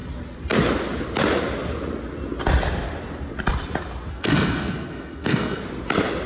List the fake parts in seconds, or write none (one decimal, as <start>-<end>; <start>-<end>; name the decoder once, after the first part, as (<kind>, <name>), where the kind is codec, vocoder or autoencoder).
4.1-5.6 (codec, SNAC)